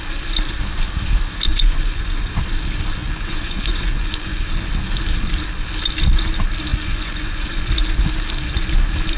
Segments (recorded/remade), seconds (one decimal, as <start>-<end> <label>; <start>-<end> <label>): 0.0-1.5 recorded; 1.5-2.3 remade; 2.3-3.0 recorded; 3.0-4.4 remade; 4.4-6.7 recorded; 6.7-7.7 remade; 7.7-9.2 recorded